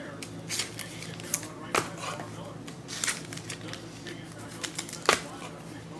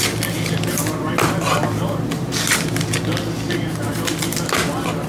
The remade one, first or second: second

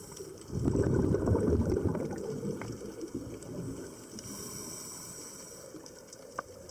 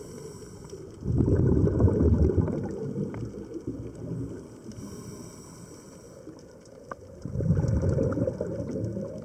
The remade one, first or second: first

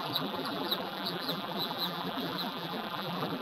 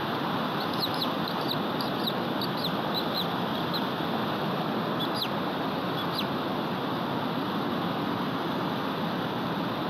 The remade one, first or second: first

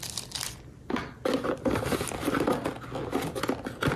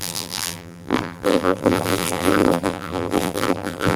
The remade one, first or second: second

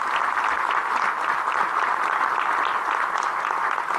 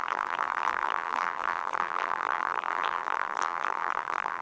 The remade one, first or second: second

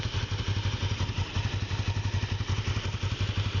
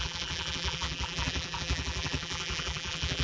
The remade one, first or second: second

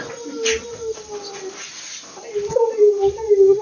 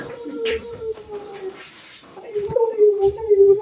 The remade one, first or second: second